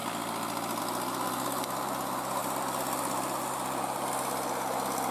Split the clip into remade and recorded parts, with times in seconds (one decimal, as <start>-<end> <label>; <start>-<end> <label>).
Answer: 0.0-2.4 recorded; 2.4-4.1 remade; 4.1-5.1 recorded